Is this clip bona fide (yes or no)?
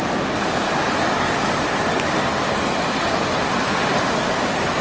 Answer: yes